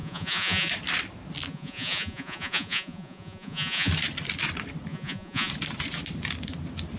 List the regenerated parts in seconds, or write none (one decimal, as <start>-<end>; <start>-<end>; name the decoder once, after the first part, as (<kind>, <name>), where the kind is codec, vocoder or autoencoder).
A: 0.0-0.7 (vocoder, Vocos); 1.5-3.9; 4.9-5.5

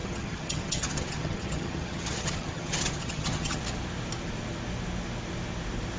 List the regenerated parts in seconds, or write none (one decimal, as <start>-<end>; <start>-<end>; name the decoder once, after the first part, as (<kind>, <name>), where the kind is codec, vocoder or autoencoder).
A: 0.0-3.6 (vocoder, HiFi-GAN)

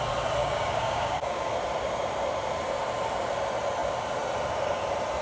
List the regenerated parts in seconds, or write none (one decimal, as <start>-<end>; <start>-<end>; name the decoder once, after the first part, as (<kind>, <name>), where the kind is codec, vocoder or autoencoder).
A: 0.4-1.5 (codec, DAC)